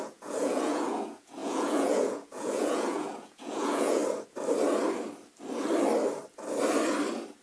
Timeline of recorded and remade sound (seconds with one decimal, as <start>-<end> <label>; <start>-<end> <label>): 0.0-4.0 remade; 4.0-7.4 recorded